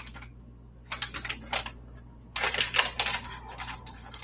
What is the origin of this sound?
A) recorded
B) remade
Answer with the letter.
A